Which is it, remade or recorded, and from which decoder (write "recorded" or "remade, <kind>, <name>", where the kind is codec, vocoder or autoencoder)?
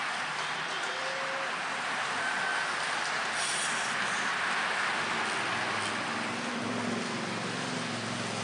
recorded